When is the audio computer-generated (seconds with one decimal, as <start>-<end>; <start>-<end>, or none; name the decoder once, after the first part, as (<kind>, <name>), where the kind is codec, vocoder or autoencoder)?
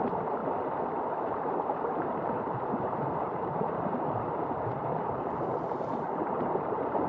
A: 0.0-0.4 (vocoder, BigVGAN v2); 1.1-7.1